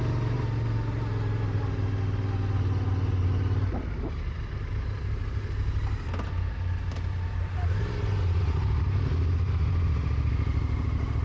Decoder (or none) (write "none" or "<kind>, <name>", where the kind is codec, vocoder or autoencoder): none